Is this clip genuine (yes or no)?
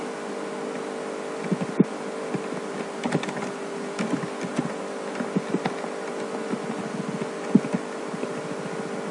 yes